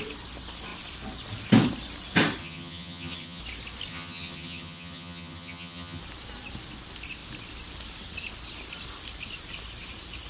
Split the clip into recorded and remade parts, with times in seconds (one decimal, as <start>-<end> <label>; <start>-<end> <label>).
0.0-2.4 recorded; 2.4-3.4 remade; 3.4-3.9 recorded; 3.9-6.0 remade; 6.0-10.3 recorded